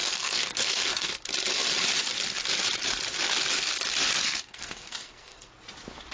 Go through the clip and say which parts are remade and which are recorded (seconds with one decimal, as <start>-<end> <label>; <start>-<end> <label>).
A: 0.0-1.1 remade; 1.1-4.2 recorded; 4.2-5.5 remade; 5.5-6.1 recorded